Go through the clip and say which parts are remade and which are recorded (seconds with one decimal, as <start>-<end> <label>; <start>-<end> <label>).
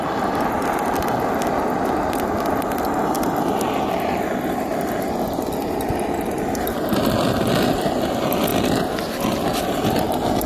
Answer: 0.0-10.5 recorded